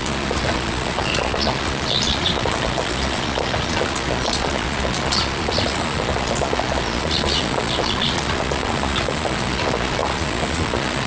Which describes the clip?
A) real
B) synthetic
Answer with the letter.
B